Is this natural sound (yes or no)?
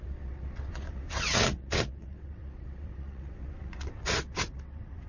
no